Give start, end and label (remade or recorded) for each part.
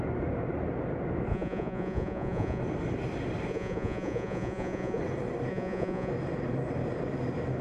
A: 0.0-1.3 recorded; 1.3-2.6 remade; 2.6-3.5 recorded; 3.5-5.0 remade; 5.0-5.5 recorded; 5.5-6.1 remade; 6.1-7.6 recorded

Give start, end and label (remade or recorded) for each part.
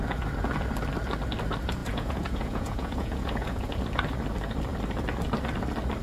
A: 0.0-1.8 recorded; 1.8-3.8 remade; 3.8-6.0 recorded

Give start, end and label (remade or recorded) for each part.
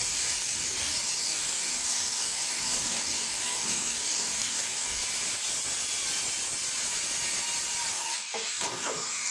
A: 0.0-5.0 remade; 5.0-7.9 recorded; 7.9-9.3 remade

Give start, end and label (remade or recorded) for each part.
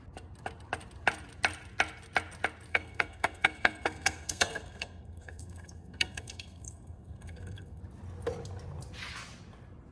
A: 0.0-2.7 recorded; 2.7-7.8 remade; 7.8-9.9 recorded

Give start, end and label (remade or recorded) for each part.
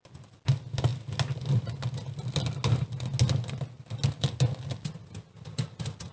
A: 0.0-6.1 recorded